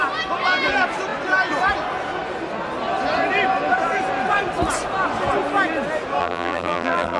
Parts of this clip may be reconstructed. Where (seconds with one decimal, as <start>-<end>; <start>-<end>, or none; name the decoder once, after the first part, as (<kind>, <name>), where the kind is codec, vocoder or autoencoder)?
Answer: 6.2-7.2 (vocoder, BigVGAN v2)